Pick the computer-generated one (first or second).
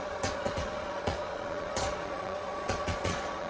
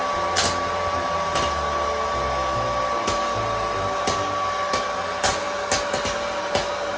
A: first